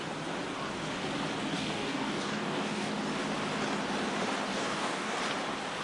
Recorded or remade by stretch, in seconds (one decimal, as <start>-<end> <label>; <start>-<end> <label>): 0.0-1.5 recorded; 1.5-2.9 remade; 2.9-4.5 recorded; 4.5-5.2 remade; 5.2-5.8 recorded